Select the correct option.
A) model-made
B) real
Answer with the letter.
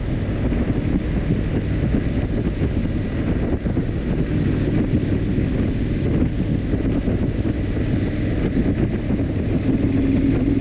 B